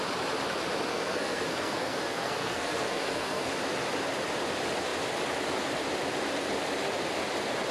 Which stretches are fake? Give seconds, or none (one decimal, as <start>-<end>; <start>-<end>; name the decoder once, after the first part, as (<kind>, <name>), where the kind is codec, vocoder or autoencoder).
0.9-3.5 (codec, SNAC)